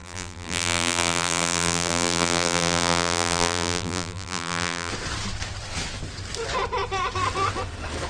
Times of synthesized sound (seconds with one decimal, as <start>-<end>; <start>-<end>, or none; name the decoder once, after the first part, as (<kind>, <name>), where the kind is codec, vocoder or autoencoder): 0.0-4.9 (vocoder, BigVGAN v2)